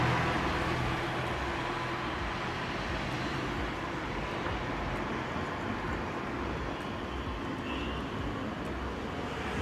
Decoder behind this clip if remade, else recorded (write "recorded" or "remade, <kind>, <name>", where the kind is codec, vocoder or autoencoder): recorded